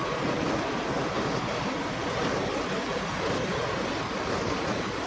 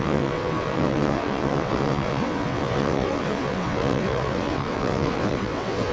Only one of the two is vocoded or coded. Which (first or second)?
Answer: second